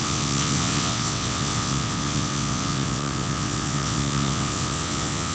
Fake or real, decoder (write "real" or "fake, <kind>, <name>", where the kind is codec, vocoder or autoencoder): fake, vocoder, WaveNeXt